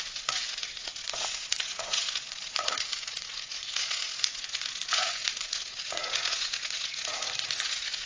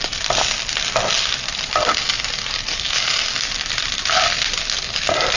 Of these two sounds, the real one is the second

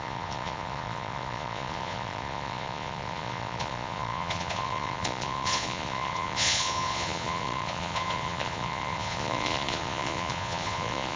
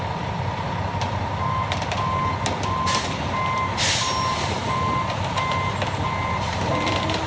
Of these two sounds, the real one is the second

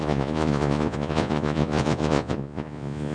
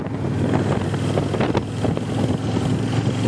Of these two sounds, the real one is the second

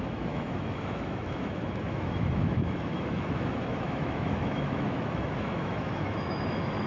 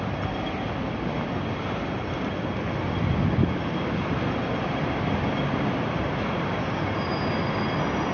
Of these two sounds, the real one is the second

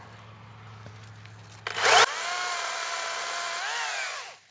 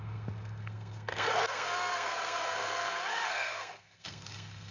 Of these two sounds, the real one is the first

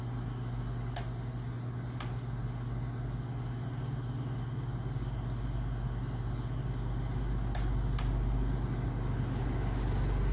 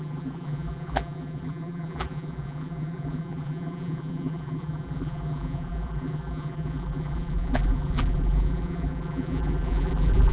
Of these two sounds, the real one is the first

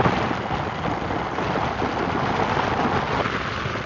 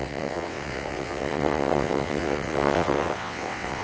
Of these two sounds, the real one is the first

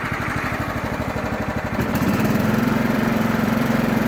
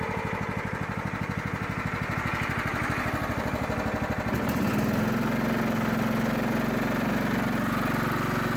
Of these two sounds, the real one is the second